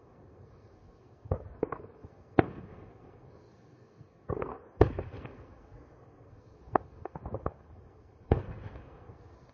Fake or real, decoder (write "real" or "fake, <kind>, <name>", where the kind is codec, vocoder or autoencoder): fake, codec, SNAC